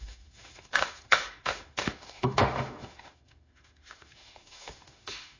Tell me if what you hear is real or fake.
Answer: fake